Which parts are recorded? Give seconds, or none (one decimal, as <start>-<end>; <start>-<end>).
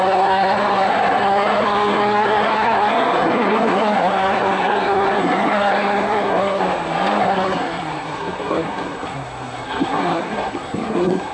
6.6-7.2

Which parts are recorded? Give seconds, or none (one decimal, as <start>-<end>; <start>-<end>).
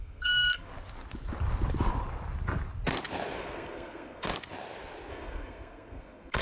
0.7-3.4; 4.3-5.1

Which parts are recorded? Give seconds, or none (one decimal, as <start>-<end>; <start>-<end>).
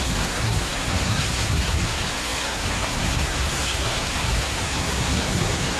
none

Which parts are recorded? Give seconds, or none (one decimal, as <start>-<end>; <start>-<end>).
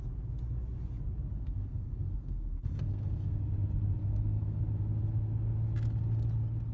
0.0-1.3; 3.4-4.0; 4.6-6.7